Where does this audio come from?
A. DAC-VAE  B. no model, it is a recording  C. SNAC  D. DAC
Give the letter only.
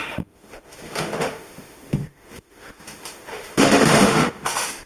A